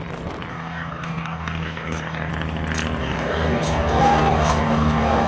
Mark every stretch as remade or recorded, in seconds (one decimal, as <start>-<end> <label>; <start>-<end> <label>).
0.0-0.5 recorded; 0.5-2.3 remade; 2.3-3.0 recorded; 3.0-5.3 remade